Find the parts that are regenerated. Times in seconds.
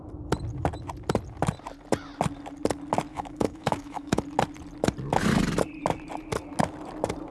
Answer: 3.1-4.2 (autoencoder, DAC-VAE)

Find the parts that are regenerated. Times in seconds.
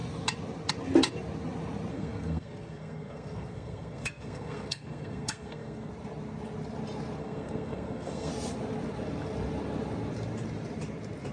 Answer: 1.9-5.9 (codec, SNAC); 7.2-8.3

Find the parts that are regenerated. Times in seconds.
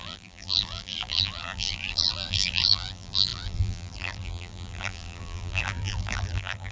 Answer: 0.0-6.7 (vocoder, BigVGAN v2)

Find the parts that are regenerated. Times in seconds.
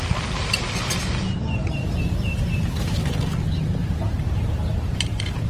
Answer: 0.4-3.1 (vocoder, BigVGAN v2); 3.8-5.0